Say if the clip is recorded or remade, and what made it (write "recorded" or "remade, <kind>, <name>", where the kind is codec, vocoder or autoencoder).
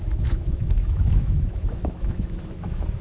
remade, autoencoder, DAC-VAE